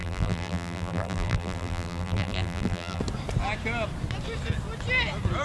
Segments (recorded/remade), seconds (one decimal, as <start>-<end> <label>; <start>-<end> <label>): 0.0-3.0 remade; 3.0-5.4 recorded